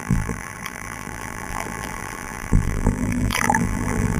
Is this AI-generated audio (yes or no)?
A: yes